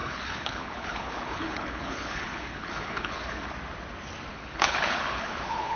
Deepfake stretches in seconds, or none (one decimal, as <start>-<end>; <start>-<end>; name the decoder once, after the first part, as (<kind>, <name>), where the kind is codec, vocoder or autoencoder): 0.0-3.5 (codec, HILCodec); 4.3-5.8